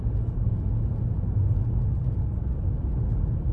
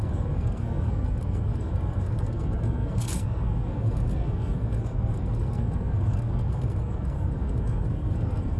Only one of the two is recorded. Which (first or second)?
first